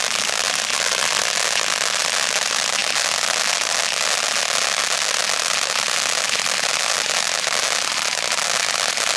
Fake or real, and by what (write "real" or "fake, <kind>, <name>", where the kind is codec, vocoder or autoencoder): real